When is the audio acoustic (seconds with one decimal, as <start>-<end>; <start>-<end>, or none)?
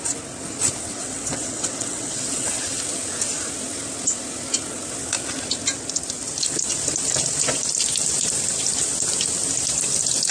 0.0-0.9; 2.8-10.3